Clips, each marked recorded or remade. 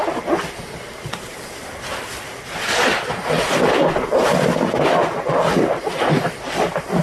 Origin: recorded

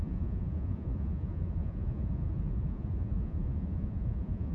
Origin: remade